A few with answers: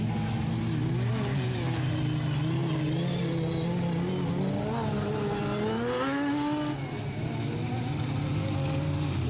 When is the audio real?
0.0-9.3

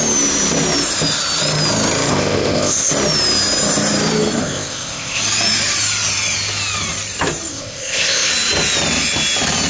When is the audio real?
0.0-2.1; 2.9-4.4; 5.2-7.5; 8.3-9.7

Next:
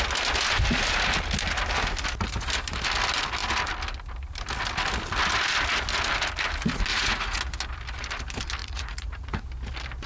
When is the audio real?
0.0-6.9; 7.4-8.6; 9.4-10.1

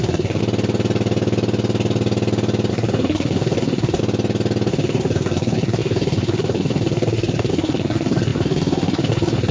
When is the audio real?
0.4-2.7; 4.0-4.7

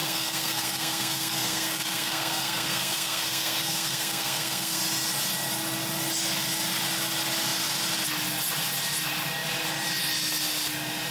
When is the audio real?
4.8-11.1

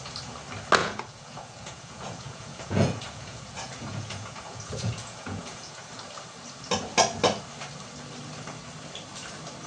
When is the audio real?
0.0-0.8; 5.9-9.7

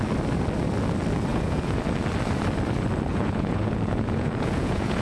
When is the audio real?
0.0-1.3; 1.8-3.1